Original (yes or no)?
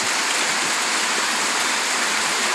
no